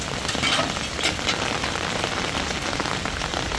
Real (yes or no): yes